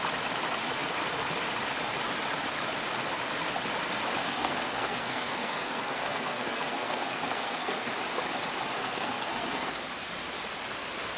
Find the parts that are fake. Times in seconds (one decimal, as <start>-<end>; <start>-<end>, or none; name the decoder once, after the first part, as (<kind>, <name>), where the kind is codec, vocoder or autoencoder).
4.2-7.9 (codec, SNAC); 8.8-9.8